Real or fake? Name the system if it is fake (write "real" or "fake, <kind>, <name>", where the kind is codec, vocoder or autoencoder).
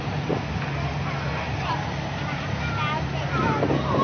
real